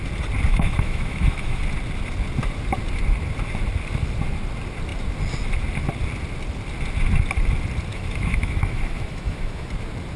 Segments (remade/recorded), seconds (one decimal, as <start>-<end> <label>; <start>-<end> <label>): 0.0-0.5 recorded; 0.5-1.6 remade; 1.6-7.9 recorded; 7.9-9.7 remade; 9.7-10.2 recorded